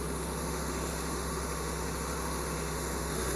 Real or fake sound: fake